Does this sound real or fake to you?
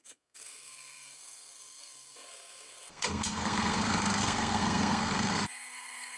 fake